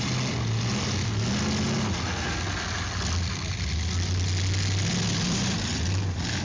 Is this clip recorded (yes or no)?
yes